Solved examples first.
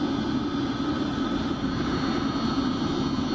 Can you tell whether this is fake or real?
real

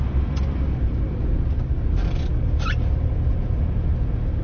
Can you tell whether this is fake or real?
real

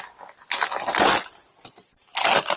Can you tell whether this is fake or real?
real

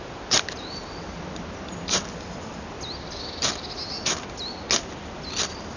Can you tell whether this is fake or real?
real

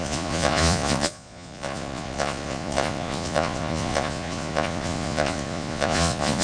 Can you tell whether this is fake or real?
fake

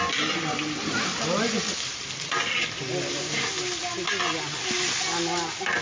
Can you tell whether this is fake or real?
real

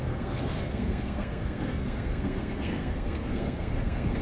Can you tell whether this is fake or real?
fake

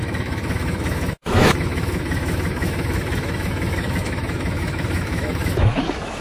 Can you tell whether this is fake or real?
fake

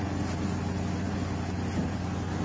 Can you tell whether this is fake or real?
real